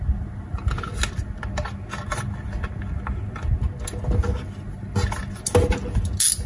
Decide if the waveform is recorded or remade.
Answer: recorded